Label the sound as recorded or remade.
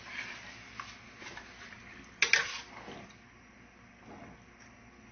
recorded